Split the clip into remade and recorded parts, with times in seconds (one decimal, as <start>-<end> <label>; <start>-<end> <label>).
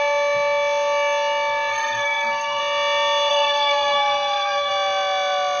0.0-1.7 recorded; 1.7-2.6 remade; 2.6-3.3 recorded; 3.3-4.7 remade; 4.7-5.6 recorded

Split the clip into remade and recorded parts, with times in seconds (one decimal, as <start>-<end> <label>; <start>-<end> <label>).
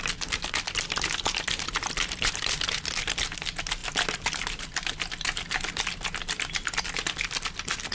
0.0-7.9 recorded